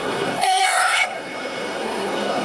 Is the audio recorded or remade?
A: remade